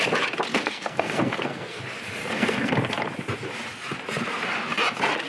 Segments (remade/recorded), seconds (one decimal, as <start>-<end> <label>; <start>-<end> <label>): 0.0-0.5 recorded; 0.5-1.8 remade; 1.8-2.2 recorded; 2.2-2.7 remade; 2.7-5.3 recorded